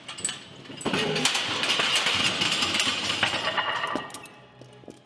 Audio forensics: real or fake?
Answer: real